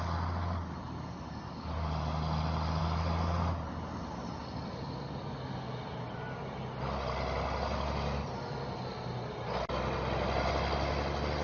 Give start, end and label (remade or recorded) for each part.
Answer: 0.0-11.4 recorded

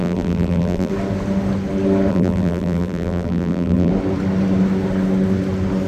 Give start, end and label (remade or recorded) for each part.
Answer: 0.0-0.9 remade; 0.9-2.1 recorded; 2.1-3.9 remade; 3.9-5.9 recorded

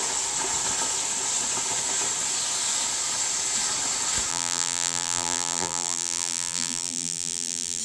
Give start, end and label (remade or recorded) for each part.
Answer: 0.0-4.3 recorded; 4.3-7.8 remade

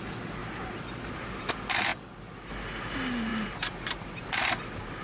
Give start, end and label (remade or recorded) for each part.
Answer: 0.0-0.4 recorded; 0.4-1.5 remade; 1.5-3.3 recorded; 3.3-4.2 remade; 4.2-5.0 recorded

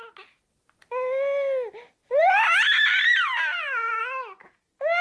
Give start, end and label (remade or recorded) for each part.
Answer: 0.0-2.0 recorded; 2.0-4.0 remade; 4.0-5.0 recorded

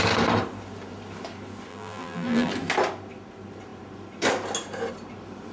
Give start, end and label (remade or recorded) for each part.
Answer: 0.0-1.7 recorded; 1.7-2.5 remade; 2.5-5.5 recorded

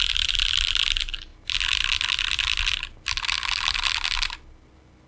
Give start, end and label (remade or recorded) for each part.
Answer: 0.0-5.1 recorded

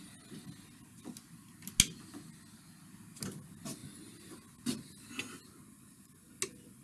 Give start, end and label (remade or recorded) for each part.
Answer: 0.0-6.8 recorded